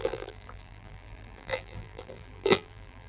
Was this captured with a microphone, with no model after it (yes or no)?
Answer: no